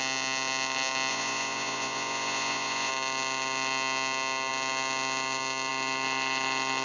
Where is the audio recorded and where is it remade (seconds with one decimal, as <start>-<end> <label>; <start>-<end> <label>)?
0.0-1.1 recorded; 1.1-2.9 remade; 2.9-6.8 recorded